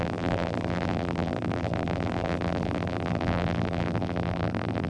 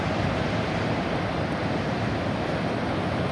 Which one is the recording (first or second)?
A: second